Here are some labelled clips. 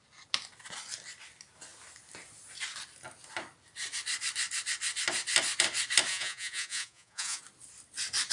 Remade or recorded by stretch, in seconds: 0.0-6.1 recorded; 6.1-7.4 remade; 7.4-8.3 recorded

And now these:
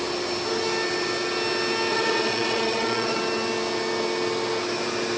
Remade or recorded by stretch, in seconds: 0.0-1.9 recorded; 1.9-3.2 remade; 3.2-5.2 recorded

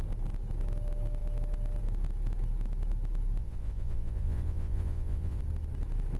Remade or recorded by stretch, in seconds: 0.0-3.4 recorded; 3.4-5.4 remade; 5.4-6.2 recorded

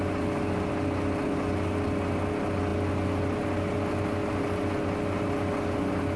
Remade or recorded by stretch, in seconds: 0.0-6.2 recorded

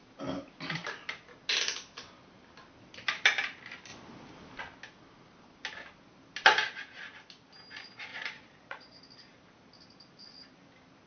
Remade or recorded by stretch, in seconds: 0.0-8.1 recorded; 8.1-9.0 remade; 9.0-11.1 recorded

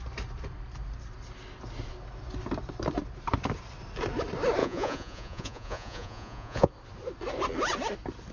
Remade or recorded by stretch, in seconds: 0.0-4.6 recorded; 4.6-6.7 remade; 6.7-8.3 recorded

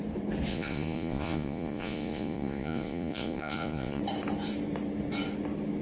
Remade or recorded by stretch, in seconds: 0.0-0.5 recorded; 0.5-4.0 remade; 4.0-5.8 recorded

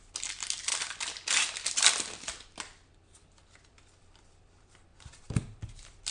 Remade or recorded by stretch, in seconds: 0.0-6.1 recorded